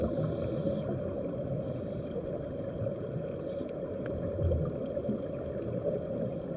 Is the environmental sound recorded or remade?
recorded